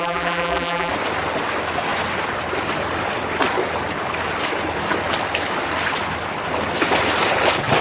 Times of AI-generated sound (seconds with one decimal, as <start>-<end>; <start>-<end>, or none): 0.0-0.9